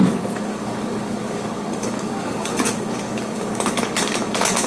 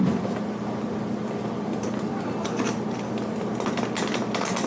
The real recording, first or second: second